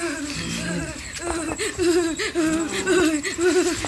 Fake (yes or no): no